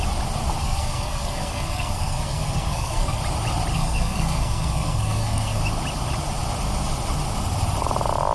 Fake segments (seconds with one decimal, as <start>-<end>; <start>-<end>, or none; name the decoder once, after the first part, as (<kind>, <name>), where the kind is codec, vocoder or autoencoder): 0.6-3.2 (codec, SNAC); 3.7-5.6